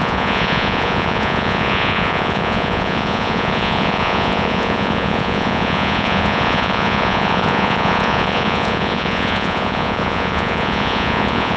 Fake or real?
fake